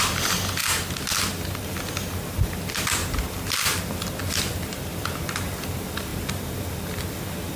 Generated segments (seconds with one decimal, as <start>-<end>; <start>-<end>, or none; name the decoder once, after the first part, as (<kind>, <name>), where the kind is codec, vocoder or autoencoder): none